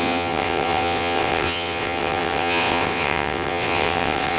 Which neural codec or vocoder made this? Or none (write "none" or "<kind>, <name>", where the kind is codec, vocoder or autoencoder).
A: vocoder, WaveNeXt